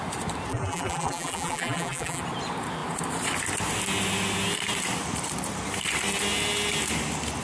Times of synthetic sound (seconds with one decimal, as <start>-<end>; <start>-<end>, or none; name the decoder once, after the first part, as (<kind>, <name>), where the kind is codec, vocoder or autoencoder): 0.5-2.2 (vocoder, BigVGAN v2)